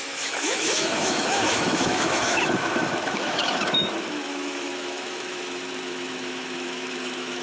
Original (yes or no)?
no